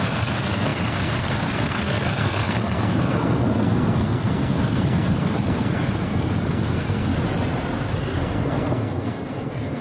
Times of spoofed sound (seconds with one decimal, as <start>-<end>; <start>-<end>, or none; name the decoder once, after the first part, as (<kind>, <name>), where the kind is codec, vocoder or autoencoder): 0.0-7.1 (codec, SNAC); 8.0-9.8